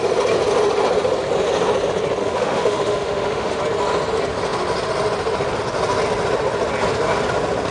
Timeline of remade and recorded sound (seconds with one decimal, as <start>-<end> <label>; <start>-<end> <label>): 0.0-2.2 recorded; 2.2-3.6 remade; 3.6-7.7 recorded